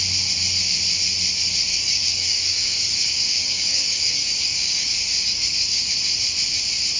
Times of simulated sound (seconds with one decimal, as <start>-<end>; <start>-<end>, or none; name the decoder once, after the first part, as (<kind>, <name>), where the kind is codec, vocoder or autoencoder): 1.7-5.9 (codec, DAC)